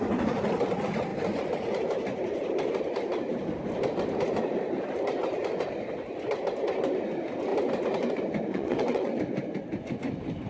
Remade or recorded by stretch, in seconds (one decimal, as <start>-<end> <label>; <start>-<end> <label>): 0.0-8.5 recorded; 8.5-9.2 remade; 9.2-10.5 recorded